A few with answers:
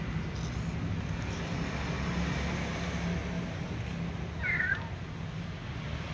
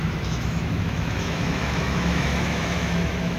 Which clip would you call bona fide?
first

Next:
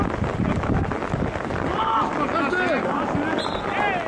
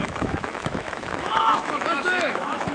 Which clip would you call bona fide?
first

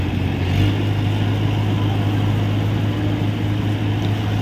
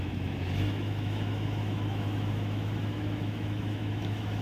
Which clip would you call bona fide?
first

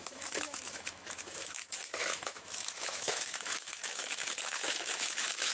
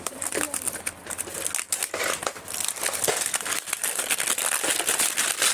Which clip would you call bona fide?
second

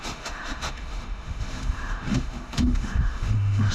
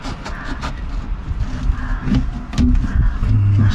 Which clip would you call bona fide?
second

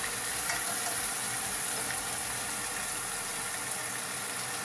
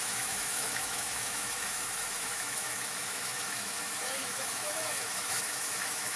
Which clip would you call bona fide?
first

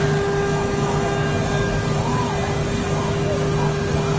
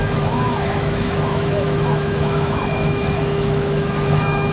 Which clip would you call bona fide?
first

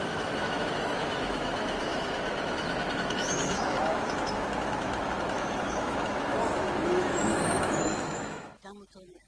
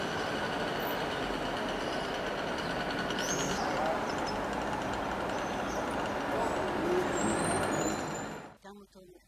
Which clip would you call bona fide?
second